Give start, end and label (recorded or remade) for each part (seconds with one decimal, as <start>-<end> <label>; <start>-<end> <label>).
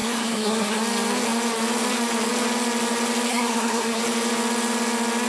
0.0-0.8 remade; 0.8-3.3 recorded; 3.3-4.0 remade; 4.0-5.3 recorded